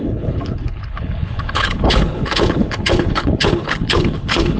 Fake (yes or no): yes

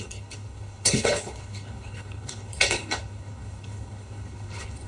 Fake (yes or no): yes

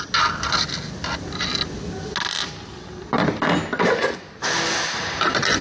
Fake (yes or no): no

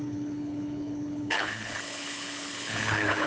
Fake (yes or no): yes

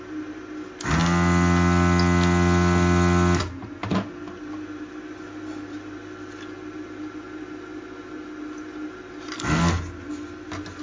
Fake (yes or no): no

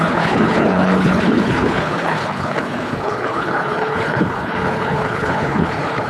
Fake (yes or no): yes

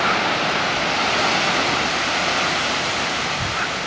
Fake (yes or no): no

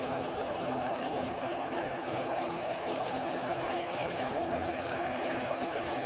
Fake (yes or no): yes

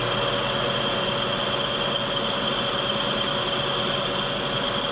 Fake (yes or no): no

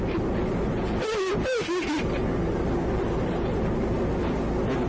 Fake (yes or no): no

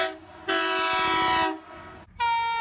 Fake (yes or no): no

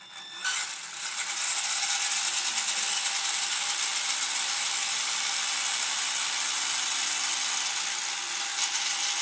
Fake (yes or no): no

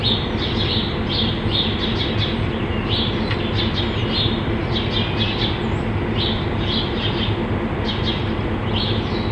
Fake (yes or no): no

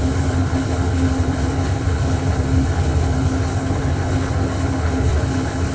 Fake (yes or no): yes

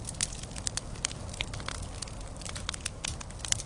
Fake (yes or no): no